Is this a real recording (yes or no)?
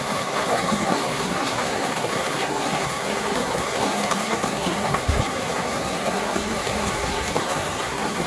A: no